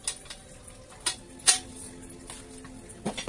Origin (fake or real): real